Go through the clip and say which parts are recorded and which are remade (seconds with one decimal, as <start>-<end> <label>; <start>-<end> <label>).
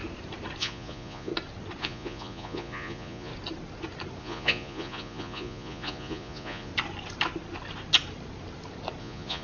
0.0-0.6 recorded; 0.6-1.3 remade; 1.3-1.8 recorded; 1.8-3.3 remade; 3.3-4.2 recorded; 4.2-6.7 remade; 6.7-9.0 recorded; 9.0-9.4 remade